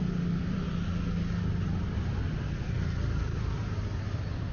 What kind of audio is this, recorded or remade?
recorded